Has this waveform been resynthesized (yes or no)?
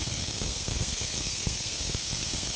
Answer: yes